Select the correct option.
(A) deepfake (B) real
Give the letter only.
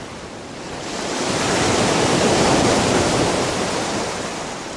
B